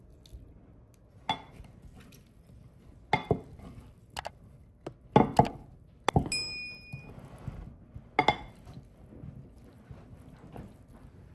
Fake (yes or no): no